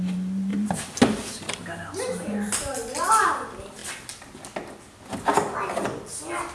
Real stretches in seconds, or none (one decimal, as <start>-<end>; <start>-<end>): 0.0-0.5; 1.7-6.5